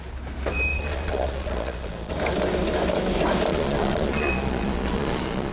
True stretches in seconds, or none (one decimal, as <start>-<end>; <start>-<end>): 0.0-0.7; 2.1-3.5